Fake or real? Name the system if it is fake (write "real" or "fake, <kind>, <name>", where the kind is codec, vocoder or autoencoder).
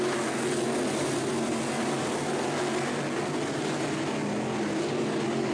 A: real